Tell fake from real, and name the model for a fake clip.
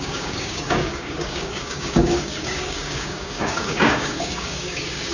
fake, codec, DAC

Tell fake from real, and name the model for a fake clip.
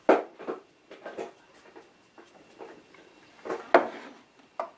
real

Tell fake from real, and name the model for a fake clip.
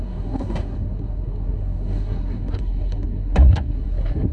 fake, codec, SNAC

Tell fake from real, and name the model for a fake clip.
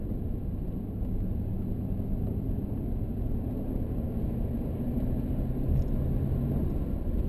real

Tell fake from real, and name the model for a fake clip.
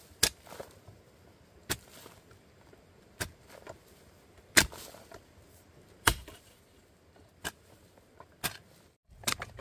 real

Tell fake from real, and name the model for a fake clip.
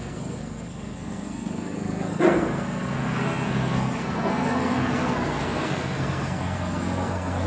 fake, codec, SNAC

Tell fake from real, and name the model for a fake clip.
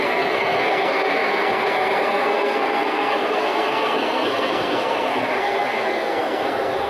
fake, codec, SNAC